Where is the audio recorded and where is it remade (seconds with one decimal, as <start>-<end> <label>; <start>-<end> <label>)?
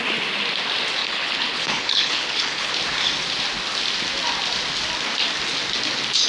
0.0-1.0 recorded; 1.0-2.7 remade; 2.7-6.3 recorded